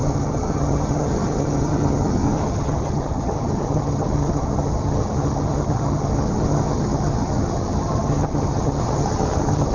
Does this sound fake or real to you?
fake